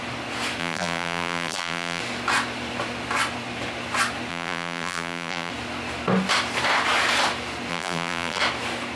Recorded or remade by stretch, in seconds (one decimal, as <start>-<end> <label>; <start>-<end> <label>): 0.0-0.6 recorded; 0.6-2.0 remade; 2.0-4.3 recorded; 4.3-5.5 remade; 5.5-7.7 recorded; 7.7-8.4 remade; 8.4-9.0 recorded